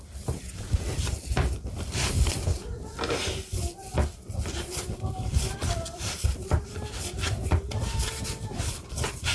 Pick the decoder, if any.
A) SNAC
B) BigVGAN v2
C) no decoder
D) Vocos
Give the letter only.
B